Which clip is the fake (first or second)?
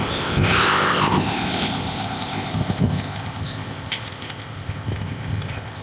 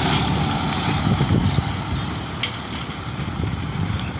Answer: first